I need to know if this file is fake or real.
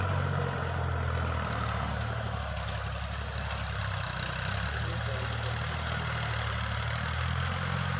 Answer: real